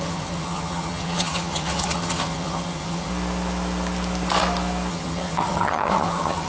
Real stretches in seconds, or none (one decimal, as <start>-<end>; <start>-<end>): 3.1-4.9